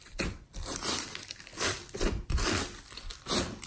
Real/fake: fake